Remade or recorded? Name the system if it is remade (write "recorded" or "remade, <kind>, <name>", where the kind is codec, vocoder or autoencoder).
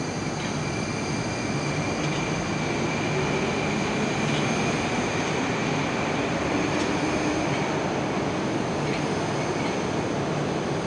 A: recorded